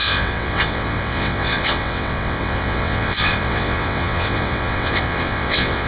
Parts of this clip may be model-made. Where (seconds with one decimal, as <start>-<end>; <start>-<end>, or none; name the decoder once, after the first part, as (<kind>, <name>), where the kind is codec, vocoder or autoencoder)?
0.0-5.9 (vocoder, WaveNeXt)